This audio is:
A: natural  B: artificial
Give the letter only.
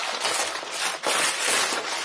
A